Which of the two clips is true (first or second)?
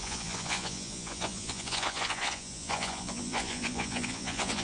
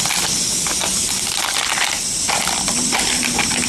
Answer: second